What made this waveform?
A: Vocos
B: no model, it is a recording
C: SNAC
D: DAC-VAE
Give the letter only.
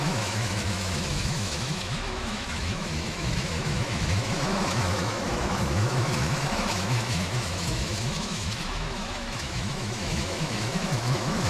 D